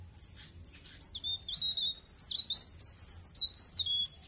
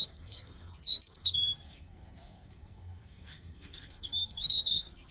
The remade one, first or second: second